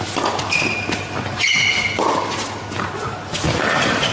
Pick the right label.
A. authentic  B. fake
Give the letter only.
A